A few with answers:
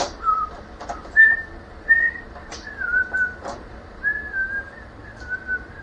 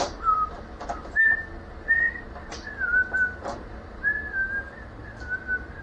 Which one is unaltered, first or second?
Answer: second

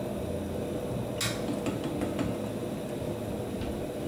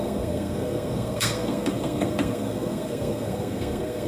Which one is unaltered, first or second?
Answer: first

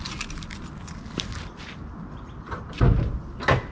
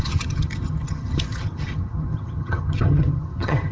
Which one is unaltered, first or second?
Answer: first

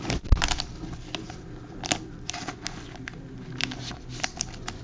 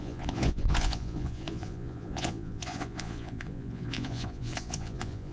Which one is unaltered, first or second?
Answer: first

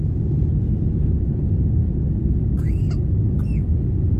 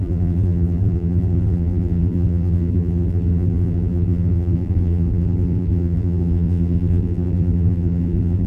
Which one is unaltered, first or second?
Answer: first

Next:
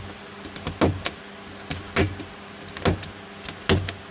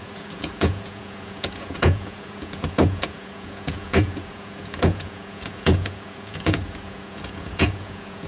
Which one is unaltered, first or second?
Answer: first